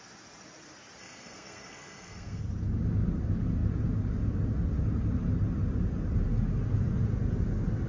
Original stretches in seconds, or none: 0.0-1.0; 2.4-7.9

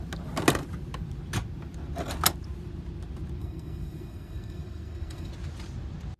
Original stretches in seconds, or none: 0.0-3.4; 5.3-6.2

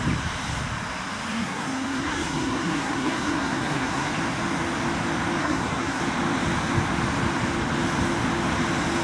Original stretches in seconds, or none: 0.0-1.3; 4.1-5.4; 6.0-9.0

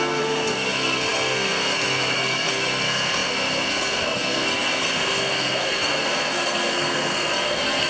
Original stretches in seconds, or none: none

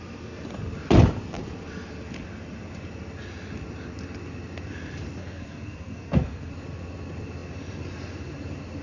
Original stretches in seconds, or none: 0.0-5.2; 6.5-8.8

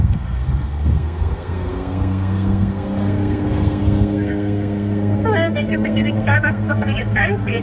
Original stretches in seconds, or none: none

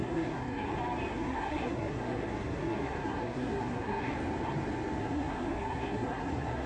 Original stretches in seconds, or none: 0.7-1.1; 4.1-5.0